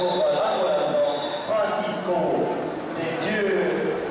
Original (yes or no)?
yes